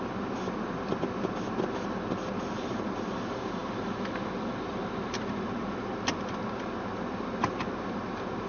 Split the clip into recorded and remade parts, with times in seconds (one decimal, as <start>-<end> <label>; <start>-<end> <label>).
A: 0.0-8.5 recorded